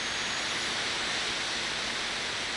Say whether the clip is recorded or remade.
recorded